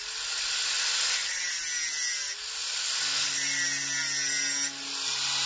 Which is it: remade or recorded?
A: recorded